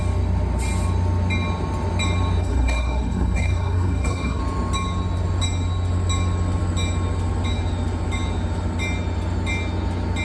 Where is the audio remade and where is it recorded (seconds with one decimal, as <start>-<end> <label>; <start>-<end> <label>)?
0.0-2.4 recorded; 2.4-4.4 remade; 4.4-10.2 recorded